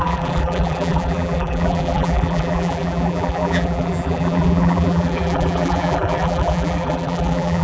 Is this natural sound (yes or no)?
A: no